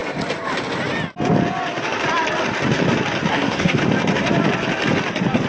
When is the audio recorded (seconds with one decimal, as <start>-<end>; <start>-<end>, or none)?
0.0-3.3; 3.8-5.5